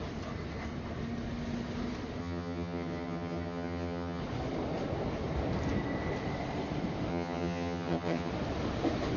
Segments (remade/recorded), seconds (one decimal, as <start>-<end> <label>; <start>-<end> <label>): 0.0-2.2 recorded; 2.2-4.2 remade; 4.2-7.1 recorded; 7.1-8.3 remade; 8.3-9.2 recorded

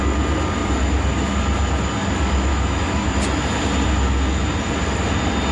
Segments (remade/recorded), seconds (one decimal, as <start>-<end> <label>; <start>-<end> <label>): 0.0-2.5 recorded; 2.5-3.1 remade; 3.1-5.5 recorded

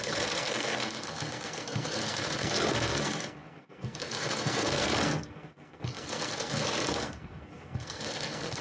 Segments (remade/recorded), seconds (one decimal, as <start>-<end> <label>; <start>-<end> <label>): 0.0-8.6 remade

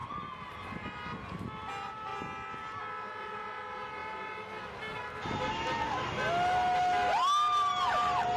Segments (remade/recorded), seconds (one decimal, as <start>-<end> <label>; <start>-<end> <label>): 0.0-8.4 recorded

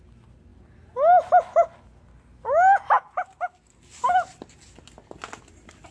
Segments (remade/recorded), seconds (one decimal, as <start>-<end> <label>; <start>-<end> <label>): 0.0-5.9 recorded

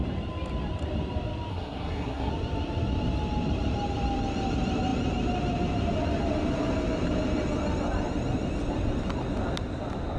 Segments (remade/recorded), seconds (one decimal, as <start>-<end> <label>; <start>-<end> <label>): 0.0-1.5 recorded; 1.5-2.3 remade; 2.3-10.2 recorded